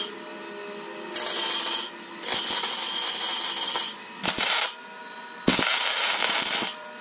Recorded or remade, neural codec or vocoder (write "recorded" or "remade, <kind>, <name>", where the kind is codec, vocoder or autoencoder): recorded